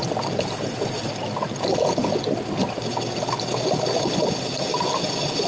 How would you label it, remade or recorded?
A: recorded